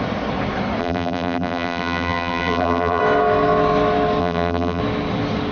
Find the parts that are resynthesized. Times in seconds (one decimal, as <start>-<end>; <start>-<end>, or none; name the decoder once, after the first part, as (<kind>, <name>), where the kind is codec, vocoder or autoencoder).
0.8-3.0 (vocoder, BigVGAN v2); 4.2-4.8